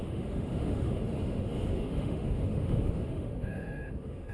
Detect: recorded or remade remade